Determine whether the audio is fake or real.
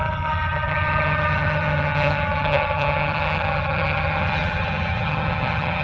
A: fake